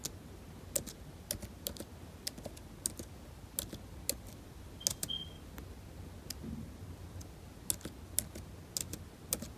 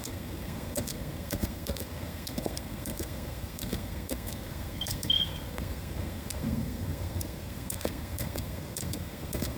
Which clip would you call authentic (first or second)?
first